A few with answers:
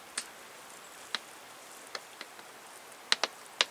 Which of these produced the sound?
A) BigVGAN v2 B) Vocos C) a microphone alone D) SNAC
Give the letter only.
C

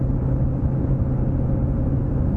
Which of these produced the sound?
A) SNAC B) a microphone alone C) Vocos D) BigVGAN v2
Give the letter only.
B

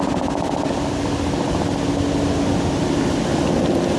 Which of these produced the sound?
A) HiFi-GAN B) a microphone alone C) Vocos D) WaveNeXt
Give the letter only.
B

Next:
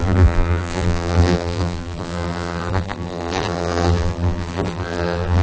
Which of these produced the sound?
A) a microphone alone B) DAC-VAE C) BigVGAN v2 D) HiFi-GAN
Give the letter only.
C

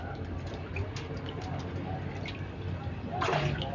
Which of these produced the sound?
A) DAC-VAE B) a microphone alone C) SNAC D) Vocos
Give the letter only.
B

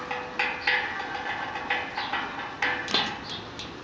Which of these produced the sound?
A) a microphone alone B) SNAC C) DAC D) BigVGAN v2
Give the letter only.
A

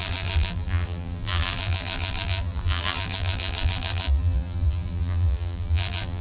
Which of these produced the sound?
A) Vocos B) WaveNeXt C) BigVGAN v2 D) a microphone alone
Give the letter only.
C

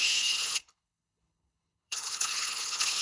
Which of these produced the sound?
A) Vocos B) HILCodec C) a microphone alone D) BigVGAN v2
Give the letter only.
B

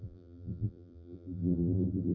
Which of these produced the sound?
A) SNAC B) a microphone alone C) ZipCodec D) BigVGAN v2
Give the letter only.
D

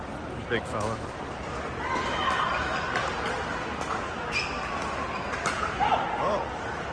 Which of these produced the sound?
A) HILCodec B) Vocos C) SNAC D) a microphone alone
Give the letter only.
D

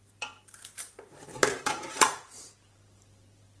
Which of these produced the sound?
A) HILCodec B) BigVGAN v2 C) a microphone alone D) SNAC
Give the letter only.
B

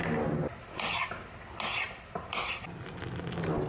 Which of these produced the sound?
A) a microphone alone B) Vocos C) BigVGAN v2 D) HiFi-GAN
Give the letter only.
A